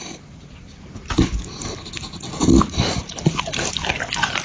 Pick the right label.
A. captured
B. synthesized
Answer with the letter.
A